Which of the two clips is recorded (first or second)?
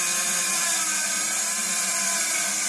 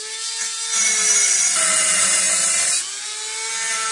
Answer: second